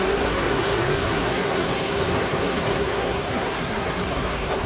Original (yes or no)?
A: no